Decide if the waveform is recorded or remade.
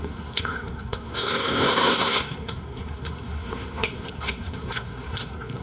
remade